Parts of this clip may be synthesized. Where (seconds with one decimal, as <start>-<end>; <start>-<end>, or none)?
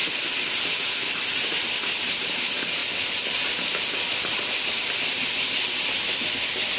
1.5-2.8; 3.4-4.3; 5.0-6.8